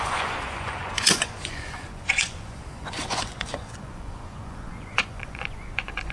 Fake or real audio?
fake